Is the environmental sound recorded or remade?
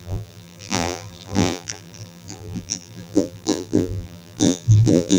remade